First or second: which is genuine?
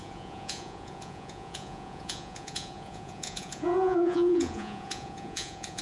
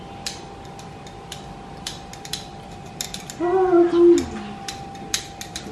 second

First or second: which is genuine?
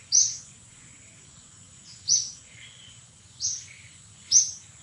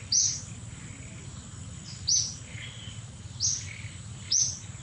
second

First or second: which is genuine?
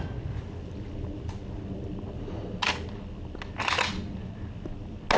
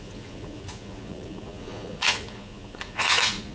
first